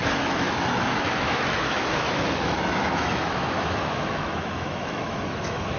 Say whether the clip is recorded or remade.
remade